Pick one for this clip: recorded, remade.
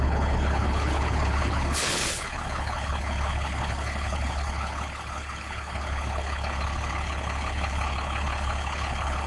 remade